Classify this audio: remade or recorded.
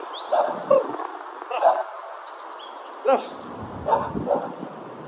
recorded